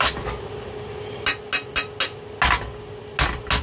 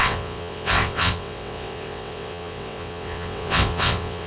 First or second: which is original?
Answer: first